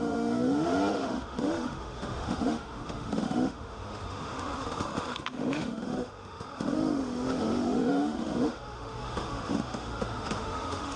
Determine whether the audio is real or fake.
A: fake